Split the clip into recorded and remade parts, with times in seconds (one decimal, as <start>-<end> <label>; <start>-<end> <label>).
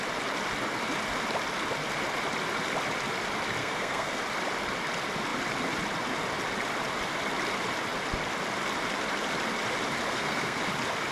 0.0-3.6 recorded; 3.6-4.2 remade; 4.2-10.1 recorded; 10.1-10.6 remade; 10.6-11.1 recorded